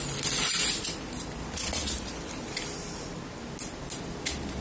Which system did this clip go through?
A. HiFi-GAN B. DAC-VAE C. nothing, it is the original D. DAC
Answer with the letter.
C